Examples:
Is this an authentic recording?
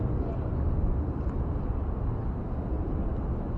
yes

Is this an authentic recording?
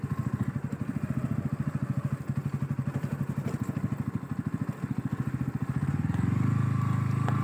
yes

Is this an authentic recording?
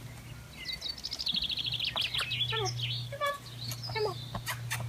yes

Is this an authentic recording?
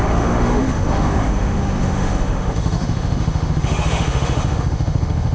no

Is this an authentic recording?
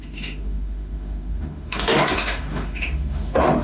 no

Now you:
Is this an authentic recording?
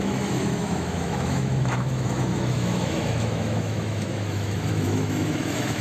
no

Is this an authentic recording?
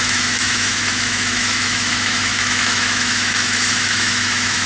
no